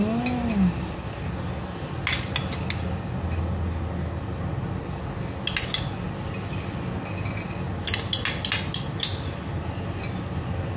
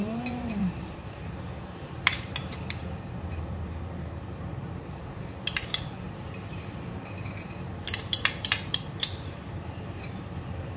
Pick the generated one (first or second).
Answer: second